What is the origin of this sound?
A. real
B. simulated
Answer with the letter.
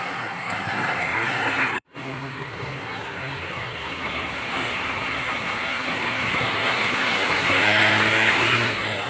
B